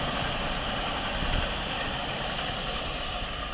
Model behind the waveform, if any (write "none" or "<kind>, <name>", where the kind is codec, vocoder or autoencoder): none